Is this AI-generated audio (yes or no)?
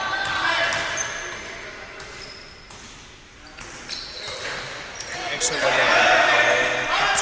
no